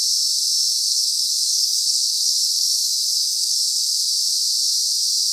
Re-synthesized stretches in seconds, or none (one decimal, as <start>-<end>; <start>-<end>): 0.9-4.1